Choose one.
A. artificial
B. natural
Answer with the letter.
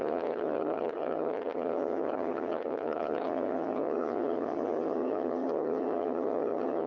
A